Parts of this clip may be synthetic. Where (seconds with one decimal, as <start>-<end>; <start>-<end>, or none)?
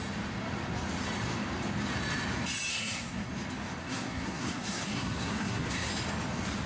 2.7-3.3; 3.8-5.9